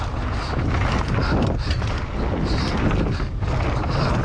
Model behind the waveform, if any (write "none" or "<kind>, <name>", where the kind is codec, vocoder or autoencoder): none